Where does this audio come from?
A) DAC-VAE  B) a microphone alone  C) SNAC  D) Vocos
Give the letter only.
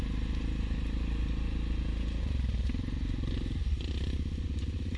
B